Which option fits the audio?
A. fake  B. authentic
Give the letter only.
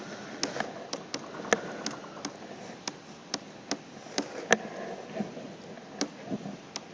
B